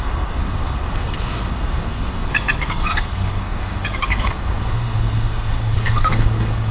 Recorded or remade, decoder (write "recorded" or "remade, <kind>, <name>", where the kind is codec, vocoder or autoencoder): remade, codec, SNAC